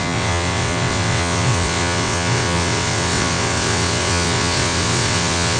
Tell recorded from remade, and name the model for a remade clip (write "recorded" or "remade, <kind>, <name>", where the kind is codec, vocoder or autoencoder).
remade, vocoder, WaveNeXt